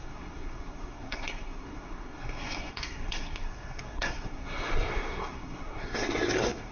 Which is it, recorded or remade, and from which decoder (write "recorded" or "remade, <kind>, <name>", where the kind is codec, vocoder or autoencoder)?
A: remade, codec, SNAC